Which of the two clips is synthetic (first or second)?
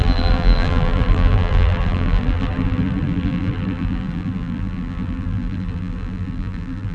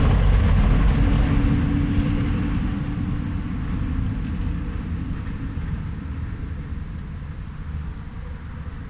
first